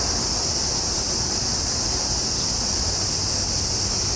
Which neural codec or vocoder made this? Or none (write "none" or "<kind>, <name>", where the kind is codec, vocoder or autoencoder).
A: none